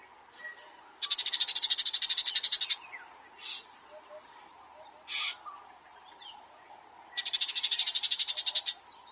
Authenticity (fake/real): real